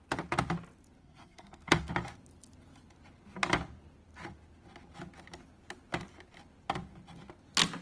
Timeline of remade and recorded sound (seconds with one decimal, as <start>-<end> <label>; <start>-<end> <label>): 0.0-1.0 recorded; 1.0-1.9 remade; 1.9-7.8 recorded